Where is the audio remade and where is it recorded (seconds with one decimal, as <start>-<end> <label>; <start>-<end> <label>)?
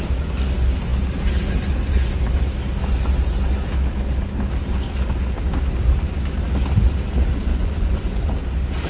0.0-7.5 recorded; 7.5-8.3 remade; 8.3-8.9 recorded